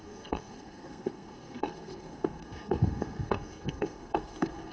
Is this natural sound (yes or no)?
no